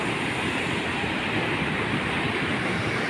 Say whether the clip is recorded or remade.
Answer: recorded